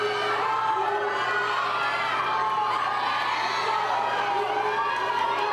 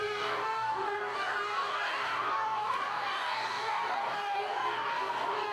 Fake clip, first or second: second